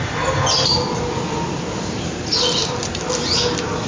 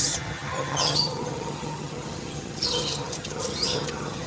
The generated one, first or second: second